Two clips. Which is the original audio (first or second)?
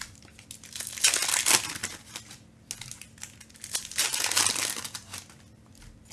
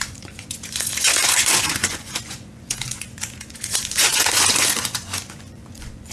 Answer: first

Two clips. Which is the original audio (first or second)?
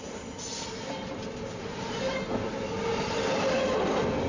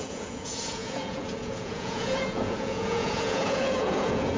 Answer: first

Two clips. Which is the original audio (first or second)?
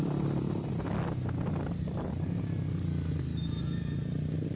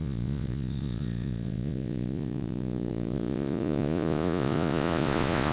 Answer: first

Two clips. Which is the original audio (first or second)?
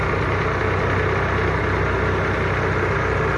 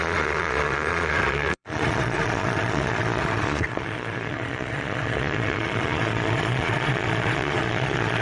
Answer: first